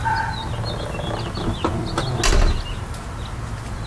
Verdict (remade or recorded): recorded